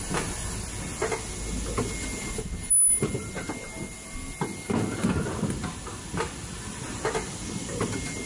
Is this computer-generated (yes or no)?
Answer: no